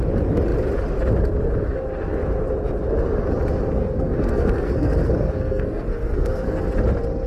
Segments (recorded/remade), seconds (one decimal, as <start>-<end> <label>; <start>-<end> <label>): 0.0-3.8 recorded; 3.8-6.6 remade; 6.6-7.3 recorded

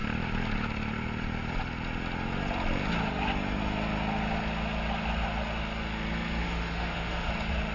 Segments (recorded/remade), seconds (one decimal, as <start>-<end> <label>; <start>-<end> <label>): 0.0-6.4 recorded; 6.4-7.3 remade; 7.3-7.7 recorded

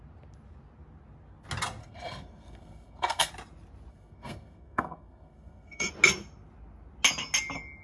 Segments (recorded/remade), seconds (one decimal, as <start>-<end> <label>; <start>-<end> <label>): 0.0-1.8 recorded; 1.8-3.3 remade; 3.3-3.9 recorded; 3.9-5.9 remade; 5.9-7.8 recorded

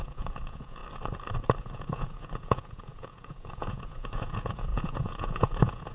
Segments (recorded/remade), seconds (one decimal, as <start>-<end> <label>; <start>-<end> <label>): 0.0-0.8 remade; 0.8-1.6 recorded; 1.6-5.9 remade

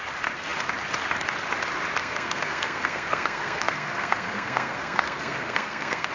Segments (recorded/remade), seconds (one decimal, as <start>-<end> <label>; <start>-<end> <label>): 0.0-2.0 recorded; 2.0-6.1 remade

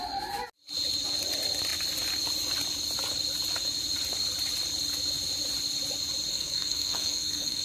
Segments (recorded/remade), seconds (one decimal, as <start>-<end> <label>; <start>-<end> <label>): 0.0-6.3 recorded; 6.3-7.6 remade

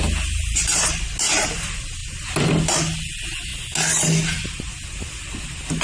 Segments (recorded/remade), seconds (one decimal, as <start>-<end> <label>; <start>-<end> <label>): 0.0-5.8 recorded